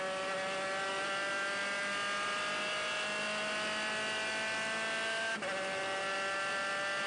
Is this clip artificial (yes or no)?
no